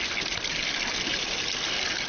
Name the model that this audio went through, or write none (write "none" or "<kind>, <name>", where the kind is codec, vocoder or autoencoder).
none